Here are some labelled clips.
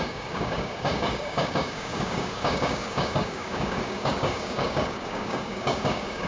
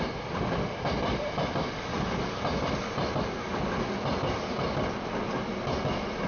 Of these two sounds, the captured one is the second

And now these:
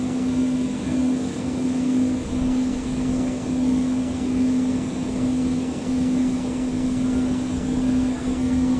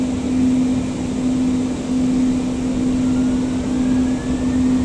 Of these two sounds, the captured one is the second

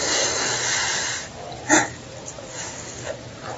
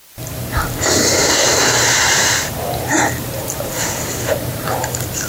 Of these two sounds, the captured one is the first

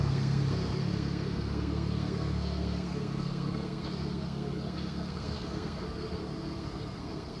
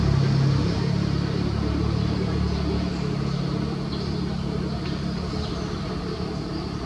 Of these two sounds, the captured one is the second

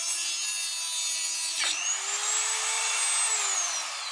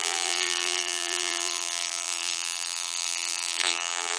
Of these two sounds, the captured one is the first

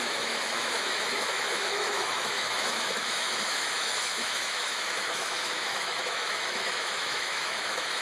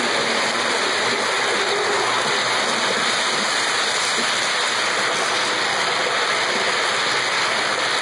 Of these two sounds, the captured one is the second